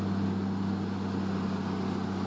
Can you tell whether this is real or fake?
real